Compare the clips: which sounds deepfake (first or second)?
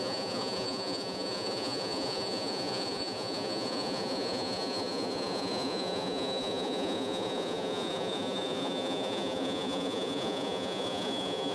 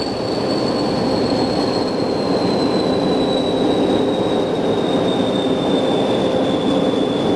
first